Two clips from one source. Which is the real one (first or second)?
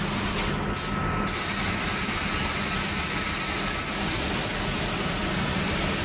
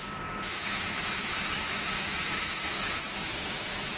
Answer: first